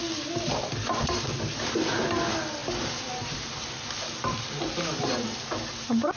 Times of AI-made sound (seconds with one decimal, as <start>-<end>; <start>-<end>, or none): none